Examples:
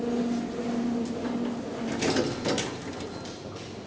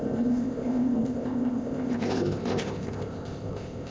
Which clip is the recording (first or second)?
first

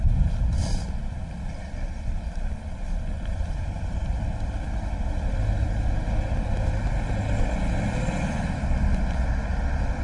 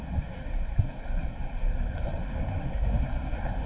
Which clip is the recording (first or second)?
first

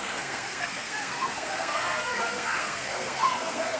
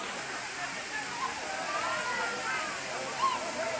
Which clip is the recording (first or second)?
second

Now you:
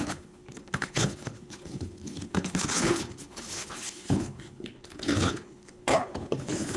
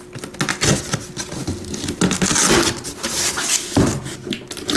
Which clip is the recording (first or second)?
second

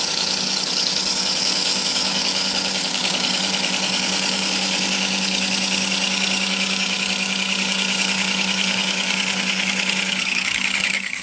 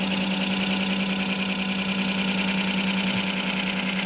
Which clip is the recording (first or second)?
second